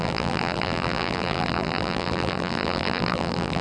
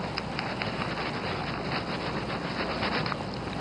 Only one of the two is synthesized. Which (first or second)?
first